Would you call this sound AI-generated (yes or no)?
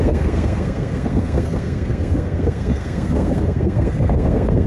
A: yes